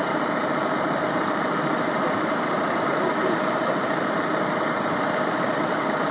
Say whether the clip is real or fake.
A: fake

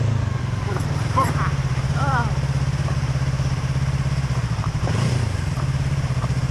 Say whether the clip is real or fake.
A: fake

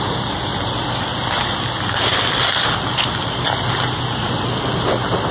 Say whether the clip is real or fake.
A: real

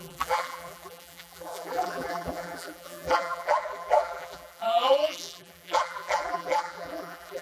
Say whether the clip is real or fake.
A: fake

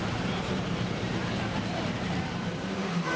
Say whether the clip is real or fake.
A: fake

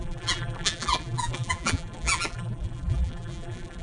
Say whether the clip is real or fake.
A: fake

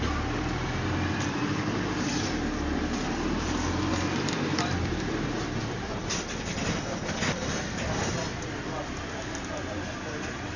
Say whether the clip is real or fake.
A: fake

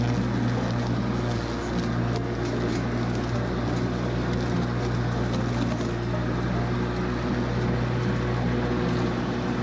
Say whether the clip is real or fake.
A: real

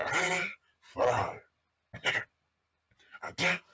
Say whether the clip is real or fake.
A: real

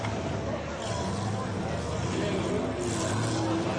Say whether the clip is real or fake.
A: real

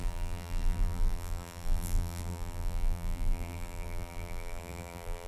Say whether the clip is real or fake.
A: fake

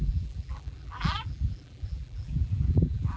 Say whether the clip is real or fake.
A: fake